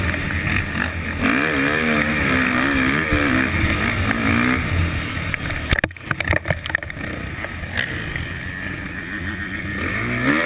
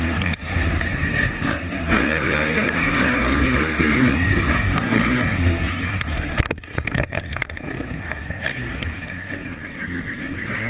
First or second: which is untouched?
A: first